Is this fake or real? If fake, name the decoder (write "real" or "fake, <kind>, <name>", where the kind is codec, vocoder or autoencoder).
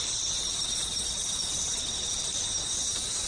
real